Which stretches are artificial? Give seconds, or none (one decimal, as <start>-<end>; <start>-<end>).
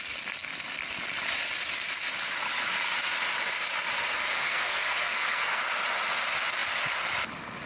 4.2-5.6